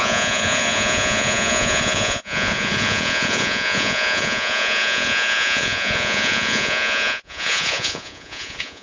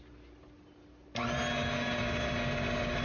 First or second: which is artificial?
first